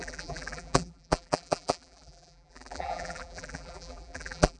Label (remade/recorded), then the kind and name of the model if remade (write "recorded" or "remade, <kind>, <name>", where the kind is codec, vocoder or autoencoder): remade, vocoder, BigVGAN v2